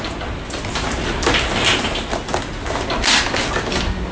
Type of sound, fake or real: real